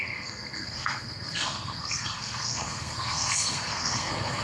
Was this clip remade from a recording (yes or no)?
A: yes